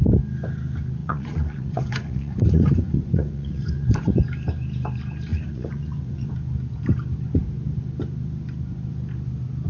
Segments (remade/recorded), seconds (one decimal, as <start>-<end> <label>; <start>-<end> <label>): 0.0-1.0 recorded; 1.0-4.2 remade; 4.2-5.3 recorded; 5.3-6.3 remade; 6.3-9.7 recorded